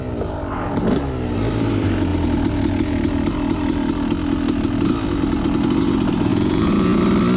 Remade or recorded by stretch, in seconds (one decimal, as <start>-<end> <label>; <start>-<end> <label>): 0.0-6.3 recorded; 6.3-7.0 remade; 7.0-7.4 recorded